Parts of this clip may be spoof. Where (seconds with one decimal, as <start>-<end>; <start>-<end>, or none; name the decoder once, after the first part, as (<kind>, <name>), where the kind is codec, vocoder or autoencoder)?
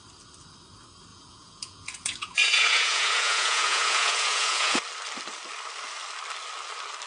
1.1-4.8 (vocoder, Vocos)